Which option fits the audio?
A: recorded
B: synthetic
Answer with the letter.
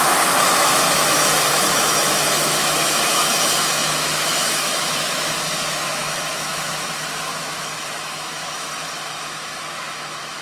B